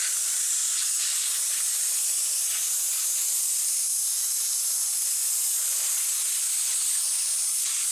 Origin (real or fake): real